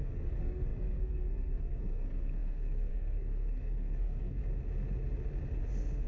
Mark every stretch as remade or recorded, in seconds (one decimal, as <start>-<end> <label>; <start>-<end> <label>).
0.0-4.4 remade; 4.4-6.1 recorded